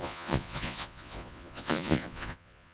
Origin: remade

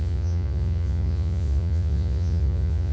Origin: remade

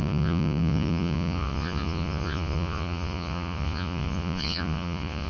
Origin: remade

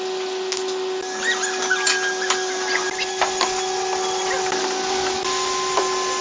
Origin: recorded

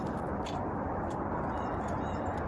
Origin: recorded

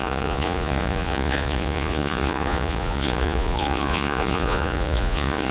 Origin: remade